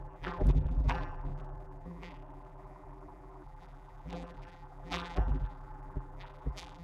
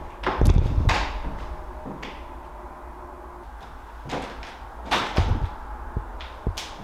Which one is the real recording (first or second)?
second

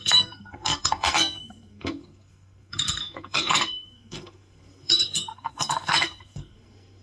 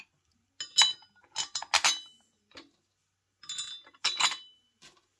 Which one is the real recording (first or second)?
second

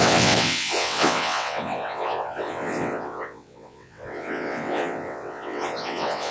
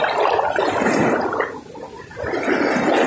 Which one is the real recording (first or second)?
second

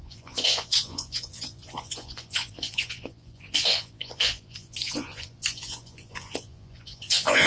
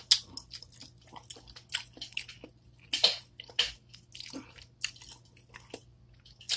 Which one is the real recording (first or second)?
second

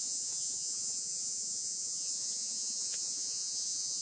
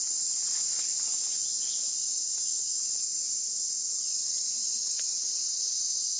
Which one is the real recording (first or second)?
second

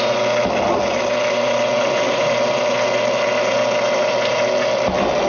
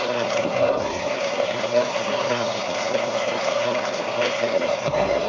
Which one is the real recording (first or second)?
first